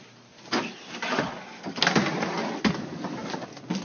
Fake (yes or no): no